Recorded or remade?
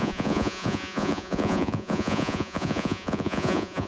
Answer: remade